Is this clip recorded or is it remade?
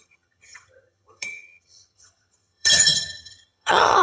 remade